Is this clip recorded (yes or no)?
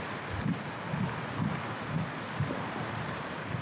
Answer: yes